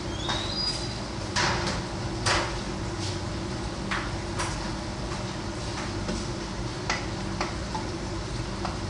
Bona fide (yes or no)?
yes